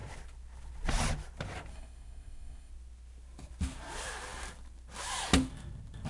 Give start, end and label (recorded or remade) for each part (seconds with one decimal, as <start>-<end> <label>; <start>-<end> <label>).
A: 0.0-1.7 recorded; 1.7-2.7 remade; 2.7-6.1 recorded